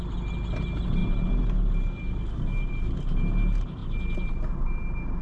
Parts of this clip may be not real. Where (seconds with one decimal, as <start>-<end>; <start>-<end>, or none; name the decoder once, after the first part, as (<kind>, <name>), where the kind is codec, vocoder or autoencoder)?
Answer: none